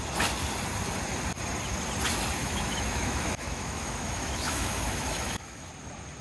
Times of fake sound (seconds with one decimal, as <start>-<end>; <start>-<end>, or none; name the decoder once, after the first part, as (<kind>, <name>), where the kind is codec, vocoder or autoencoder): 2.4-5.7 (autoencoder, DAC-VAE)